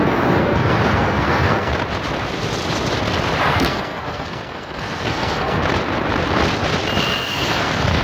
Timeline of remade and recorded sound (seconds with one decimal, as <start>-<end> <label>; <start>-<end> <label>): 0.0-1.7 remade; 1.7-3.4 recorded; 3.4-5.6 remade; 5.6-7.0 recorded; 7.0-8.0 remade